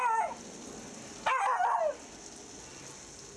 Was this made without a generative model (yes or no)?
yes